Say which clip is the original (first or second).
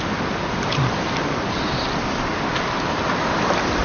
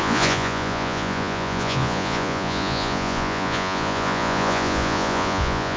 first